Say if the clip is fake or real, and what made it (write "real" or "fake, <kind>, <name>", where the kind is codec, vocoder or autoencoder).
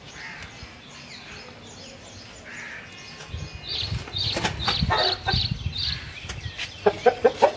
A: real